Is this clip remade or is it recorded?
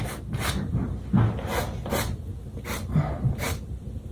recorded